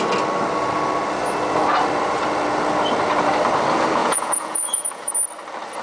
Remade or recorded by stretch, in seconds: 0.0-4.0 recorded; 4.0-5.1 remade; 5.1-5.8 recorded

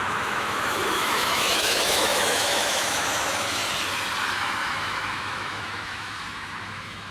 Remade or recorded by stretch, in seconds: 0.0-3.6 remade; 3.6-4.3 recorded; 4.3-7.1 remade

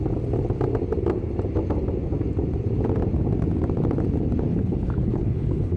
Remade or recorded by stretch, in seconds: 0.0-4.5 recorded; 4.5-5.8 remade

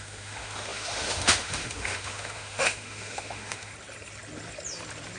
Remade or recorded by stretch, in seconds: 0.0-3.7 remade; 3.7-5.2 recorded

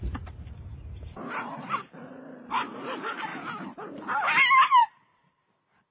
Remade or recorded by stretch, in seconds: 0.0-4.8 recorded; 4.8-5.4 remade; 5.4-5.9 recorded

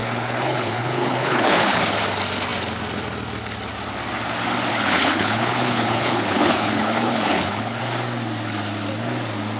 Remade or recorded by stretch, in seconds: 0.0-1.9 remade; 1.9-4.7 recorded; 4.7-7.8 remade; 7.8-9.6 recorded

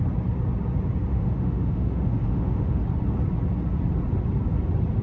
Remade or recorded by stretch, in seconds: 0.0-1.1 recorded; 1.1-2.8 remade; 2.8-5.0 recorded